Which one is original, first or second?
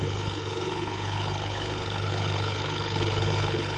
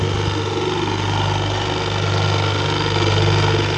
second